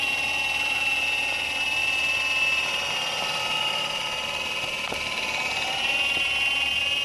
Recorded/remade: remade